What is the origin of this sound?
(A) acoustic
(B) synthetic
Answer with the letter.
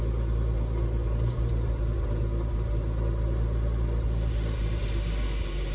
A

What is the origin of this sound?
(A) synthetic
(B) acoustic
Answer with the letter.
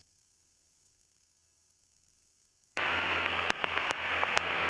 A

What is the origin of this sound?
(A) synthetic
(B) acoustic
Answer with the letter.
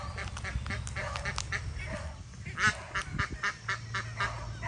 B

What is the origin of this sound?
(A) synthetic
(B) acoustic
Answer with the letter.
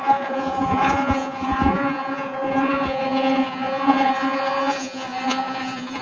A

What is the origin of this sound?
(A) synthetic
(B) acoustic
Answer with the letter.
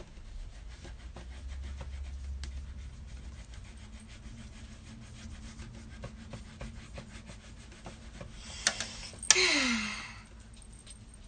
B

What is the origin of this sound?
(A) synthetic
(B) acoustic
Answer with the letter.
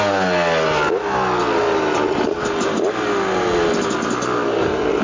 B